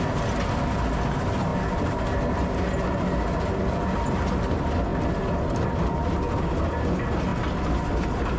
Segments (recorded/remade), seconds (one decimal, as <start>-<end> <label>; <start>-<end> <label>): 0.0-8.4 recorded